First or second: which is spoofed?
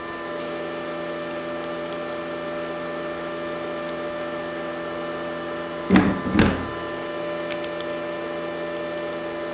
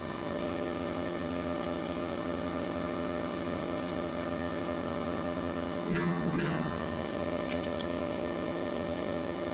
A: second